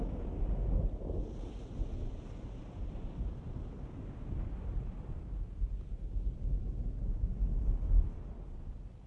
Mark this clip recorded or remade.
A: recorded